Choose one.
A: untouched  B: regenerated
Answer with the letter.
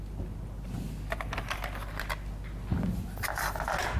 A